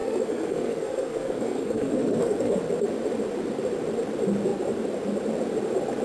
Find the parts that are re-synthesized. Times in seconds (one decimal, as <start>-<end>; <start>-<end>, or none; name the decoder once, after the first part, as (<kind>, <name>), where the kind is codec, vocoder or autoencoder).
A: 0.0-2.6 (codec, SNAC)